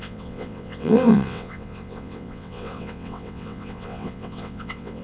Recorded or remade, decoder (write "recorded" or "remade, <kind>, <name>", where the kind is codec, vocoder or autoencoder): remade, vocoder, WaveNeXt